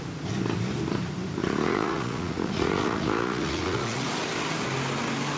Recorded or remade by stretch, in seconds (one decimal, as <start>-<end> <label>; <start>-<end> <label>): 0.0-1.4 recorded; 1.4-4.1 remade; 4.1-5.4 recorded